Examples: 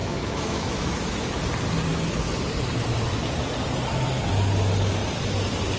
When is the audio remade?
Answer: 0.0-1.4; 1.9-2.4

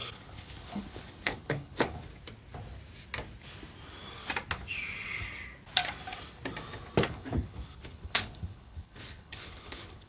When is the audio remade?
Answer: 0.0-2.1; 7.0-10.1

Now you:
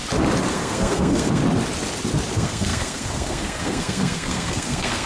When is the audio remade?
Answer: 0.5-1.4; 2.3-5.1